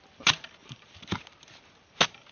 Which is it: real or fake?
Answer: real